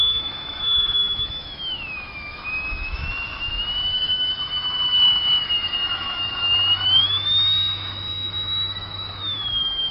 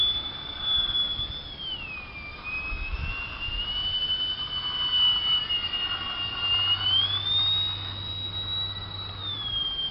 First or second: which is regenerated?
first